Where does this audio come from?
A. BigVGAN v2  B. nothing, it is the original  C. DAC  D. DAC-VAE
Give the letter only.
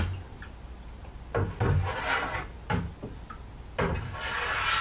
B